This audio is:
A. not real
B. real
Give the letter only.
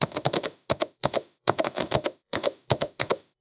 A